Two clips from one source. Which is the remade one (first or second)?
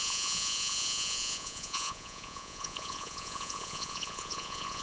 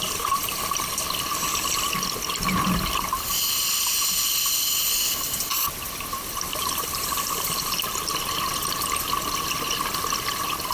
first